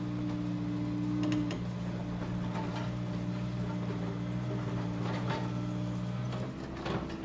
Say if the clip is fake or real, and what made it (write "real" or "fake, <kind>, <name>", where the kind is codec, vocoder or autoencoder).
real